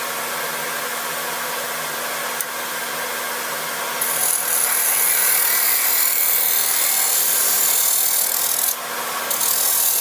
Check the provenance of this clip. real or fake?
real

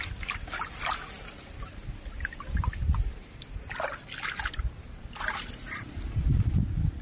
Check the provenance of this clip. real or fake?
real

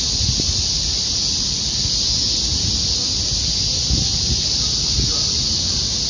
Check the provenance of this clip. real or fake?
real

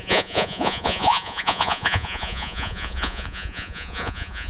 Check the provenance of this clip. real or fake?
fake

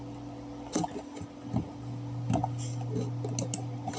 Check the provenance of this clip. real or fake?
real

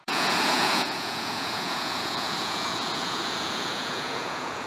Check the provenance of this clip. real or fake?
fake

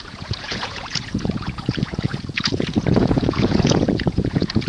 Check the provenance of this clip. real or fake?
fake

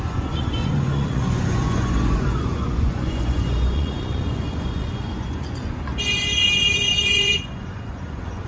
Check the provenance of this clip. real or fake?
fake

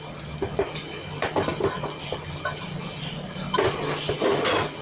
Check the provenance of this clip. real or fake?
real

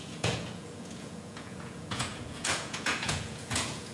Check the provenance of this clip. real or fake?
fake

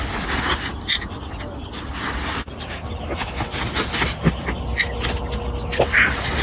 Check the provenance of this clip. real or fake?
real